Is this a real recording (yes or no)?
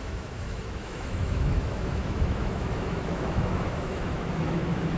no